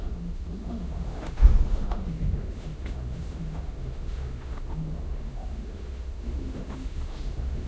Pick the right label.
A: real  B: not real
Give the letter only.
B